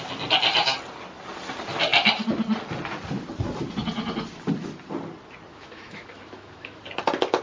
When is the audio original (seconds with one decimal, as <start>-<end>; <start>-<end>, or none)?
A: 0.0-5.5; 6.8-7.4